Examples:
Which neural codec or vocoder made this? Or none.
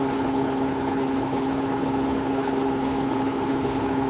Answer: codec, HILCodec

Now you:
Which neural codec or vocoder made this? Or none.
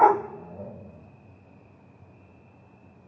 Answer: none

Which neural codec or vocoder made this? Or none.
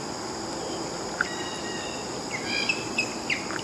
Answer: none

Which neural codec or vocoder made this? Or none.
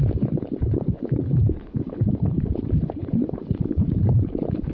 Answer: codec, HILCodec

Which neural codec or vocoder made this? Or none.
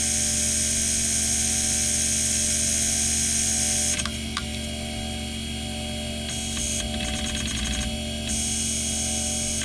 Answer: none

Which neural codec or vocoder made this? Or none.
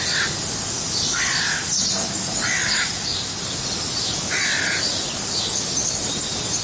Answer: none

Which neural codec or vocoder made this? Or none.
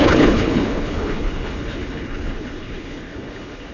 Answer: codec, HILCodec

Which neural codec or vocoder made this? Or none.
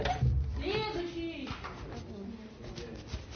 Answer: none